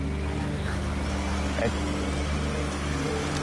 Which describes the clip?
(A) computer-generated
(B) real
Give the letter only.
B